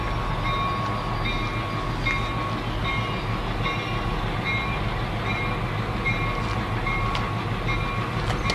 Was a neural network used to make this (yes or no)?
no